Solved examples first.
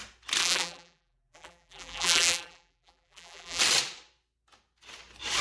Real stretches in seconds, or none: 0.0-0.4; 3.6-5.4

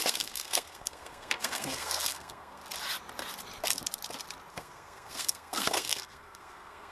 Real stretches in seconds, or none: 2.6-4.5

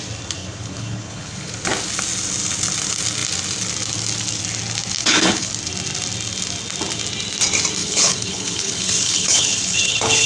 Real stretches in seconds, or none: 0.0-0.4; 1.5-5.0; 5.5-7.8